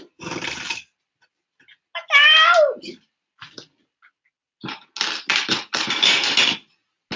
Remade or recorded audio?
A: recorded